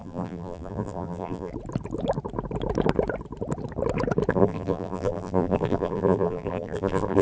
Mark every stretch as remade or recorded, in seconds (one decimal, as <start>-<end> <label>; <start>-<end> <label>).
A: 0.0-1.5 remade; 1.5-4.3 recorded; 4.3-7.2 remade